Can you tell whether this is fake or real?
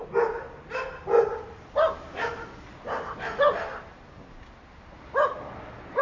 real